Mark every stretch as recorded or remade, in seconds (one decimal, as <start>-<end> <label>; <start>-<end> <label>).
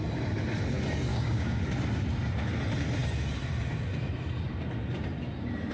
0.0-1.1 recorded; 1.1-1.6 remade; 1.6-5.7 recorded